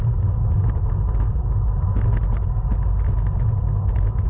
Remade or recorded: recorded